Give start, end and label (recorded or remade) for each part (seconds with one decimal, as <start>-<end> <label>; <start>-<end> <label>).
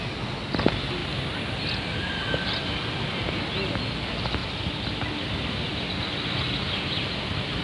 0.0-7.6 recorded